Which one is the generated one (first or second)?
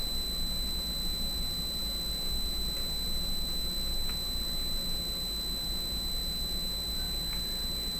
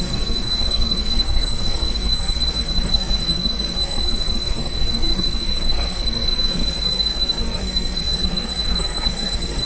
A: second